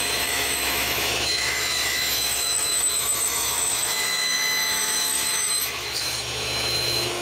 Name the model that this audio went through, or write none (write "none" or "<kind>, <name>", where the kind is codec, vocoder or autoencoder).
autoencoder, DAC-VAE